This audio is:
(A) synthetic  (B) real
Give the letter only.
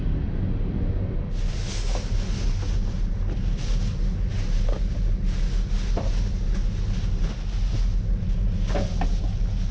B